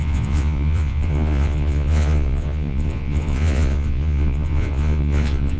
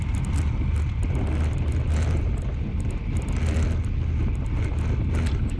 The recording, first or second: second